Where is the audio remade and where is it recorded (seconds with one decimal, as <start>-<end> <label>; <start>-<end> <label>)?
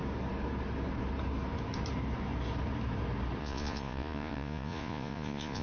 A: 0.0-3.4 recorded; 3.4-5.6 remade